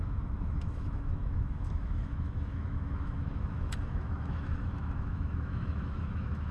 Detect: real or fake fake